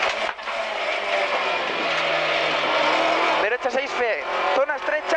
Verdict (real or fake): real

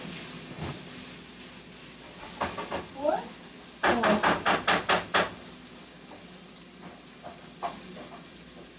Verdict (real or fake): real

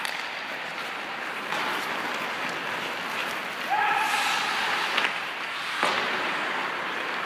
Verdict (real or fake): real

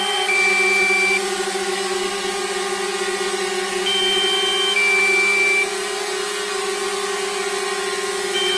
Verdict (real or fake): real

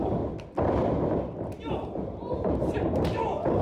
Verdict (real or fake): real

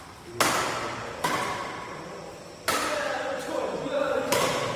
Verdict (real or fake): fake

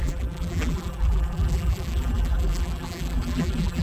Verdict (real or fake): fake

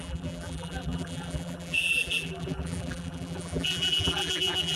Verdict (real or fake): fake